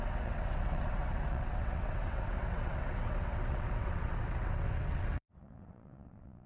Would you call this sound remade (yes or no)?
yes